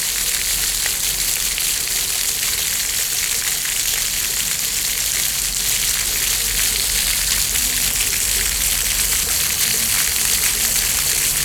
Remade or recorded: recorded